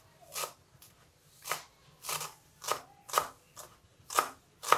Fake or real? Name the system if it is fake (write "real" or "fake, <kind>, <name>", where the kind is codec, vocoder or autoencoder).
real